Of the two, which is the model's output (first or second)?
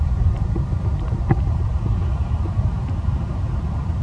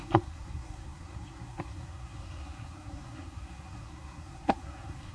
second